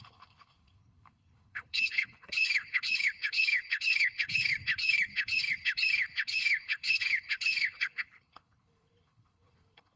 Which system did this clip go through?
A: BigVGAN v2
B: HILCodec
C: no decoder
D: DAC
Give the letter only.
B